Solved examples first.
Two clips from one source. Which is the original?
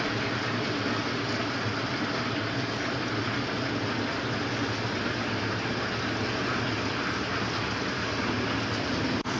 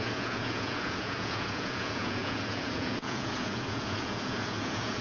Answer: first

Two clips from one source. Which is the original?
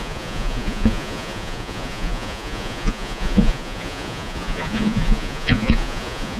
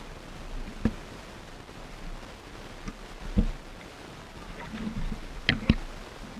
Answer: second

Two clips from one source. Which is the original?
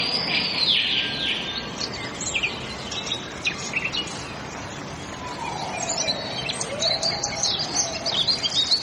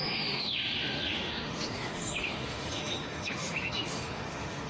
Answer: first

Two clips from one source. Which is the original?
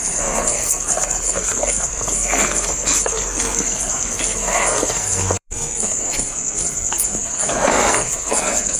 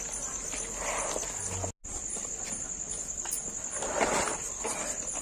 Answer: second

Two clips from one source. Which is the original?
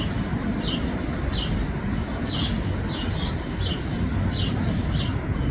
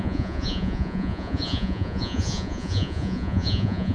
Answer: first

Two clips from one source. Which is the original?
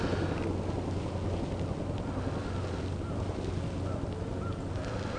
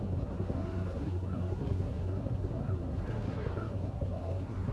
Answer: first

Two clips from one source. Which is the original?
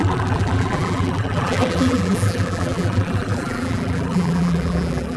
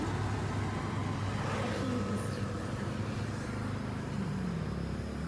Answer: second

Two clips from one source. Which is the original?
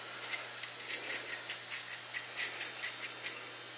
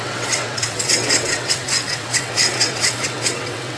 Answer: first